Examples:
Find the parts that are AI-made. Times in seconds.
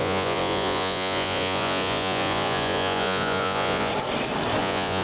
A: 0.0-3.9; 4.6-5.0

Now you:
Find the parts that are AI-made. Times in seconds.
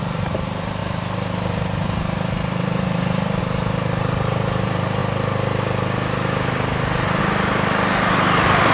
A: 0.0-5.0; 7.2-8.7